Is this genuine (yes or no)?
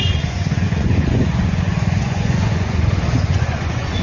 no